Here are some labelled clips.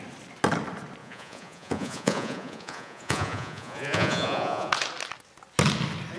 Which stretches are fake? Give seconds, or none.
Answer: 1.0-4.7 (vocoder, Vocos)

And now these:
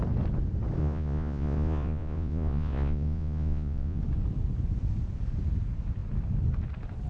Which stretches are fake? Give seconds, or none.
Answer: 0.8-4.0 (vocoder, Vocos)

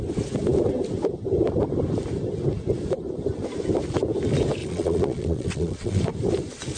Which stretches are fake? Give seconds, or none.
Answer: 4.6-6.0 (vocoder, Vocos)